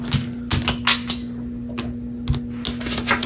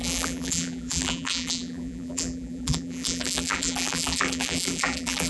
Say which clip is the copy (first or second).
second